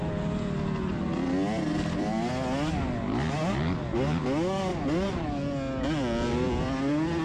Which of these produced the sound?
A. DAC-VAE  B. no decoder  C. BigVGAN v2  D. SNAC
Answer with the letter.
B